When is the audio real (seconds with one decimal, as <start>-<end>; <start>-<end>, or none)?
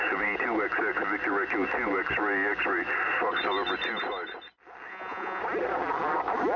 0.0-4.9; 5.4-6.6